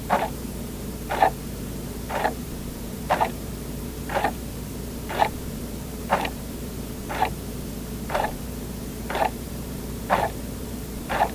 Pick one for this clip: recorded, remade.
remade